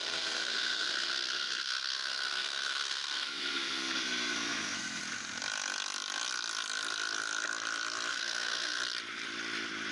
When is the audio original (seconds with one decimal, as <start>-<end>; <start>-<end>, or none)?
5.0-8.1; 8.8-9.9